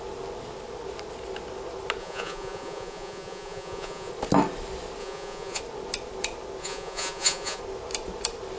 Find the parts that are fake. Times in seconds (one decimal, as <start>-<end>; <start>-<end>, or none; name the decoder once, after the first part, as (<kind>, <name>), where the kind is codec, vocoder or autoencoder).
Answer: 2.0-4.1 (vocoder, Vocos); 5.0-5.6; 6.6-7.6